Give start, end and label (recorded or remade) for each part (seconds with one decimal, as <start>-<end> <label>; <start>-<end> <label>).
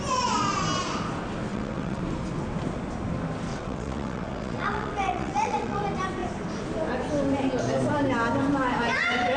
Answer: 0.0-1.5 recorded; 1.5-2.0 remade; 2.0-3.5 recorded; 3.5-5.8 remade; 5.8-9.4 recorded